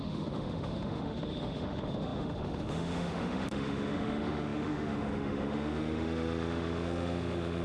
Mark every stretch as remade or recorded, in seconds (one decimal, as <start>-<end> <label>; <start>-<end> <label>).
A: 0.0-7.6 remade